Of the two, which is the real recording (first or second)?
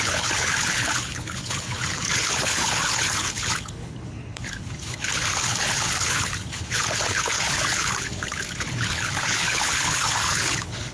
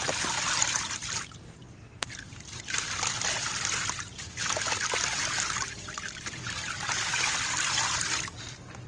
second